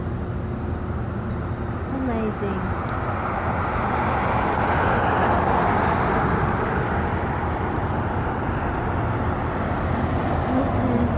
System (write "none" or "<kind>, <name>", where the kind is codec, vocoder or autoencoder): none